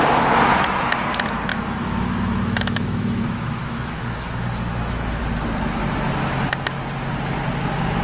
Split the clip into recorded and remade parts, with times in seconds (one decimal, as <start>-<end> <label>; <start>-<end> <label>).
0.0-1.5 recorded; 1.5-5.2 remade; 5.2-8.0 recorded